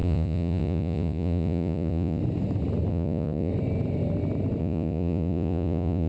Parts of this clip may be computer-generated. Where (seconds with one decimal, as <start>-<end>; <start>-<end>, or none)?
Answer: 0.0-2.2; 2.9-3.5; 4.6-6.1